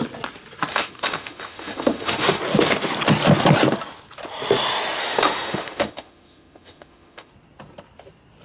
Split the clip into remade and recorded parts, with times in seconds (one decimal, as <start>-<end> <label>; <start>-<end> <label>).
0.0-0.7 recorded; 0.7-2.4 remade; 2.4-5.0 recorded; 5.0-7.3 remade; 7.3-8.4 recorded